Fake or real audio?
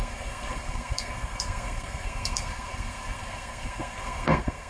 fake